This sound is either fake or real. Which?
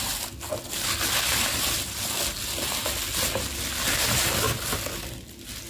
real